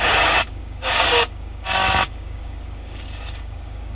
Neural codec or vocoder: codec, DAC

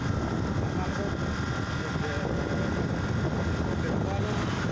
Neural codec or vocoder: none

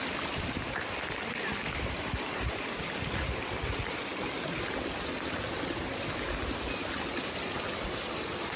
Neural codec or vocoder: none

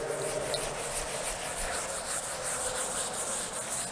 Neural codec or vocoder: none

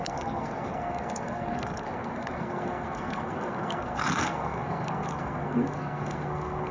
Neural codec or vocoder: codec, SNAC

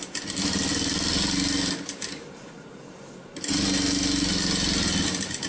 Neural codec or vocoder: none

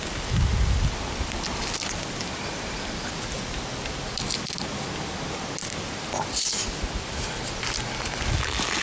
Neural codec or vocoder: none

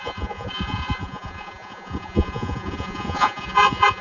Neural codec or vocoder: vocoder, Vocos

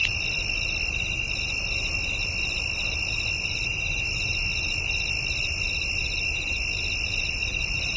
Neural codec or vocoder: none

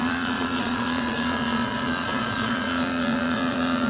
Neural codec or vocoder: vocoder, Vocos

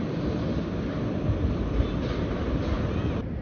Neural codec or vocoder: none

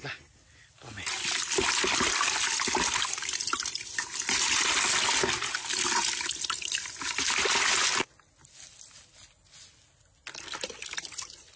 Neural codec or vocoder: none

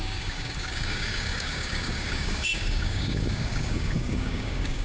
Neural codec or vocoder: codec, DAC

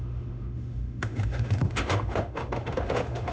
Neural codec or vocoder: autoencoder, DAC-VAE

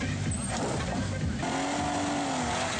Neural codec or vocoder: none